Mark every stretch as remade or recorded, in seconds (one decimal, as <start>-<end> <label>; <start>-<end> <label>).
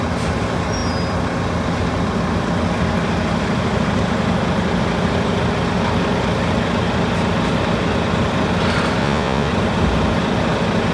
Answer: 0.0-9.0 recorded; 9.0-9.5 remade; 9.5-10.9 recorded